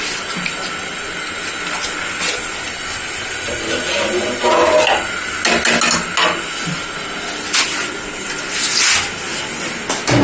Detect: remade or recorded recorded